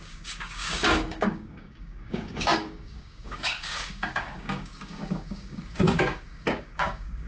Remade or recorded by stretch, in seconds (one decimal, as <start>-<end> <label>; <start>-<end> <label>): 0.0-7.3 remade